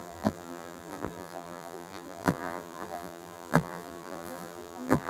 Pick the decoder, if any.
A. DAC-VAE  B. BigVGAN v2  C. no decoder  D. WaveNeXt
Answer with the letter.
B